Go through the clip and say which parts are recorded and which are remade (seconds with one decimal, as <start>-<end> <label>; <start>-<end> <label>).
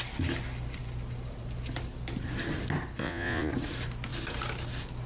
0.0-3.0 recorded; 3.0-3.5 remade; 3.5-5.1 recorded